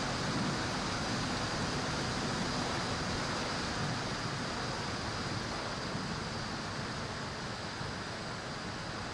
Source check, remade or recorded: recorded